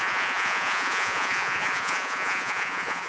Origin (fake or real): fake